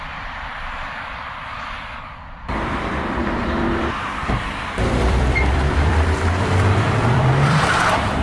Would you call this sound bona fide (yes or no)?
no